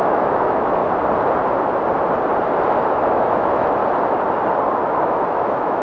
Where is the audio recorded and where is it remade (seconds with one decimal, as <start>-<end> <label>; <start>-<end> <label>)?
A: 0.0-0.8 remade; 0.8-2.9 recorded; 2.9-3.8 remade; 3.8-4.8 recorded; 4.8-5.8 remade